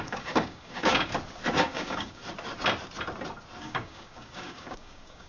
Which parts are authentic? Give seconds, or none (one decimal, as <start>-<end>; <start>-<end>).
1.1-1.6; 2.2-3.6